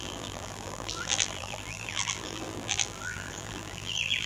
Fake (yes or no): yes